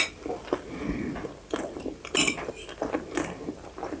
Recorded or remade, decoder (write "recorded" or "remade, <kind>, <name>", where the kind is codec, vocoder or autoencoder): recorded